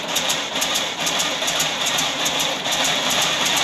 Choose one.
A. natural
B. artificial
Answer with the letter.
B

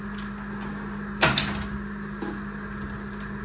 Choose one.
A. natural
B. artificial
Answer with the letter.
A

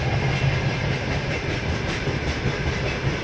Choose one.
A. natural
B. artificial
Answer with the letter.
A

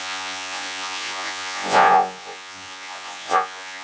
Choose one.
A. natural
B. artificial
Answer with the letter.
B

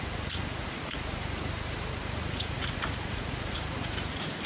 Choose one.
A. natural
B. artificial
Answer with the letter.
B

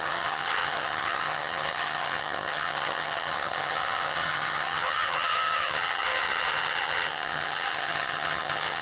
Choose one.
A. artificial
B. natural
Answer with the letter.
A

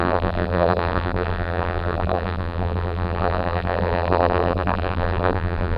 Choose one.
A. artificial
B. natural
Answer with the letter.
A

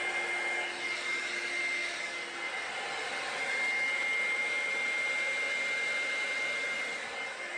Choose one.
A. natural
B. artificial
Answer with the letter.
A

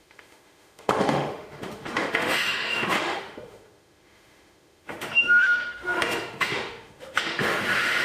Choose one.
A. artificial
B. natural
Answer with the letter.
A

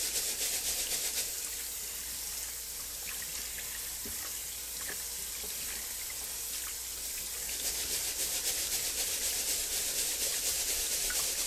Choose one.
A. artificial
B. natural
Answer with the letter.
B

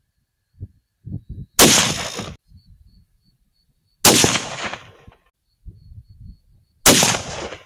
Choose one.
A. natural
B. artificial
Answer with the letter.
A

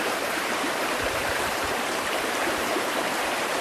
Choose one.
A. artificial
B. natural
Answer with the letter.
A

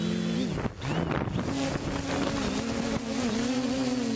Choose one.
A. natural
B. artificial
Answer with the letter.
A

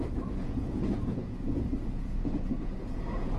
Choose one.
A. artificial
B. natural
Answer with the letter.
A